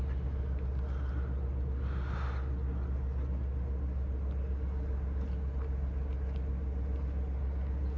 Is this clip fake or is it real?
real